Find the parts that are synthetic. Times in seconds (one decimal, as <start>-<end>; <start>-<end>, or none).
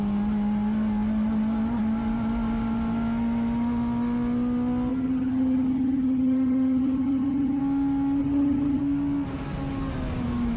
4.9-7.6; 8.2-8.8